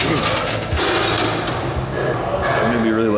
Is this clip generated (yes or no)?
no